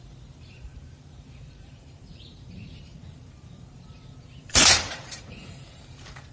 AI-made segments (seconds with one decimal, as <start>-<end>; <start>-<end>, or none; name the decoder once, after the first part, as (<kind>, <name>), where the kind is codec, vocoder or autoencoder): 0.0-6.3 (vocoder, BigVGAN v2)